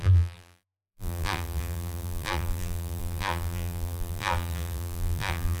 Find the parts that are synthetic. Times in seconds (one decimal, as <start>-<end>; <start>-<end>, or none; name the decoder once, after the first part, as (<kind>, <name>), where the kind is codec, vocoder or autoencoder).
0.0-5.6 (vocoder, BigVGAN v2)